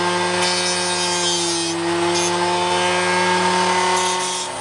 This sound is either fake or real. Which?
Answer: real